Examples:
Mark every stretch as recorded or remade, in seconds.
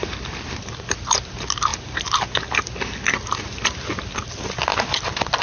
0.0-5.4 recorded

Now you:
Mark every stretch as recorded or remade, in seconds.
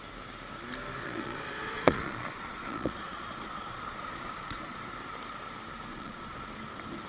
0.0-1.0 recorded; 1.0-4.8 remade; 4.8-5.9 recorded; 5.9-6.4 remade; 6.4-7.1 recorded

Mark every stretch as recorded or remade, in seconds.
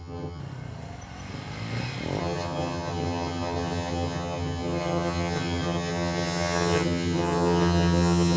0.0-0.4 remade; 0.4-2.2 recorded; 2.2-8.4 remade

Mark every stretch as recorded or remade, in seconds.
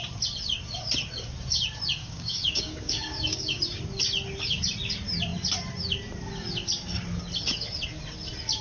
0.0-2.0 recorded; 2.0-3.6 remade; 3.6-8.6 recorded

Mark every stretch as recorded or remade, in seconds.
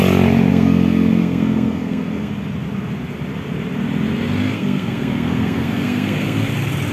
0.0-0.5 recorded; 0.5-2.3 remade; 2.3-4.4 recorded; 4.4-6.5 remade; 6.5-6.9 recorded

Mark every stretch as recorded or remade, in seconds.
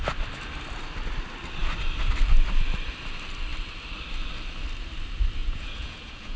0.0-5.4 recorded; 5.4-6.4 remade